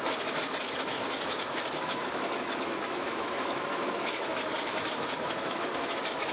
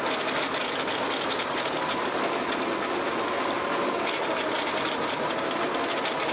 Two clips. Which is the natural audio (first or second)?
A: second